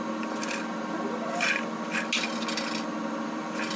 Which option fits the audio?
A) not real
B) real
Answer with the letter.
B